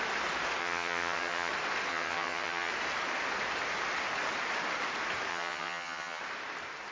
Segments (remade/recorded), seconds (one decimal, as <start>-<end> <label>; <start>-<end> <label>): 0.0-0.6 recorded; 0.6-1.5 remade; 1.5-1.9 recorded; 1.9-2.7 remade; 2.7-5.3 recorded; 5.3-6.2 remade; 6.2-6.9 recorded